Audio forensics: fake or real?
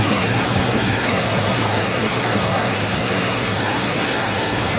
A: fake